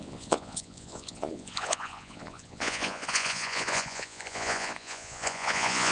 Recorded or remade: remade